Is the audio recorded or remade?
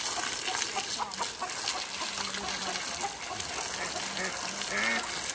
recorded